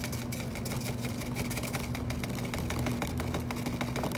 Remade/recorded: recorded